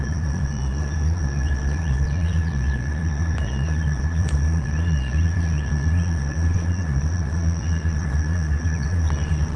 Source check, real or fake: fake